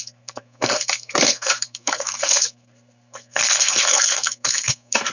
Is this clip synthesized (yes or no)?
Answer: yes